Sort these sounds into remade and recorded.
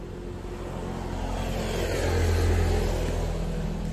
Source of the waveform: recorded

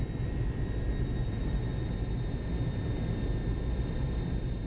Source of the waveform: recorded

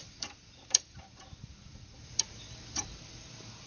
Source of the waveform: remade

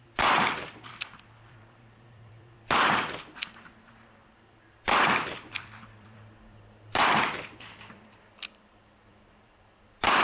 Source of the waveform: remade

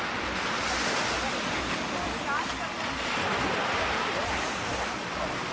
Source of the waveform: recorded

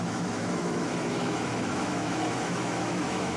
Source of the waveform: remade